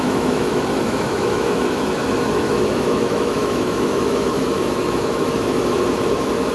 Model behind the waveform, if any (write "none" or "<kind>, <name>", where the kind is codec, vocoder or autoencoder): autoencoder, DAC-VAE